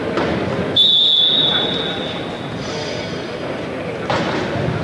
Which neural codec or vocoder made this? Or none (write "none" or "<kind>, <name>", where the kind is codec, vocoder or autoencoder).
none